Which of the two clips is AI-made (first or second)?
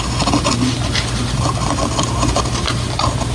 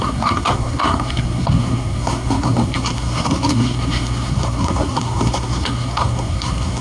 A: second